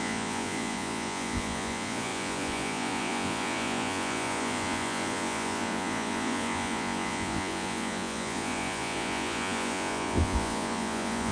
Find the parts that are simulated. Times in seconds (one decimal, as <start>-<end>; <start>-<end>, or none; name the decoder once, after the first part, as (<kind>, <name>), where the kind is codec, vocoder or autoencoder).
0.0-11.3 (vocoder, Vocos)